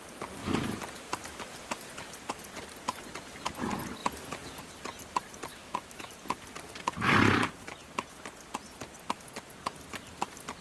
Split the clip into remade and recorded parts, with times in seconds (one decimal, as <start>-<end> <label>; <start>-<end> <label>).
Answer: 0.0-5.5 recorded; 5.5-6.1 remade; 6.1-10.6 recorded